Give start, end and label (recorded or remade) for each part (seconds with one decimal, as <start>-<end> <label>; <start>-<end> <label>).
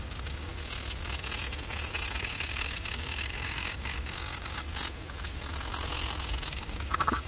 0.0-0.5 remade; 0.5-2.2 recorded; 2.2-4.7 remade; 4.7-6.5 recorded; 6.5-7.3 remade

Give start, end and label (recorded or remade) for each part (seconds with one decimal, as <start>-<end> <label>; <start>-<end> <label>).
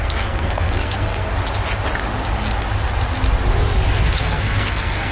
0.0-1.3 remade; 1.3-4.1 recorded; 4.1-5.1 remade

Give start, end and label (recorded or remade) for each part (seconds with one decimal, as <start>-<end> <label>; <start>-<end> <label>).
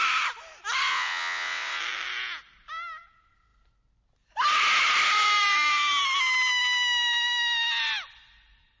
0.0-0.9 recorded; 0.9-1.8 remade; 1.8-8.8 recorded